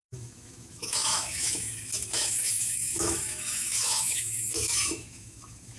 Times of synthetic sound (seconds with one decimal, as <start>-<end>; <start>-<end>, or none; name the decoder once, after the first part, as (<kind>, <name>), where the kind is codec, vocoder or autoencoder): 0.0-5.8 (autoencoder, DAC-VAE)